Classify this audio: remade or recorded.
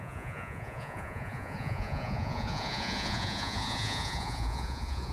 remade